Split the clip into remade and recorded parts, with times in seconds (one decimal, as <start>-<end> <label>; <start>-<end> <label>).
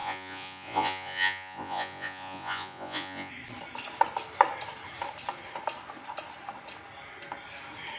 0.0-3.3 remade; 3.3-8.0 recorded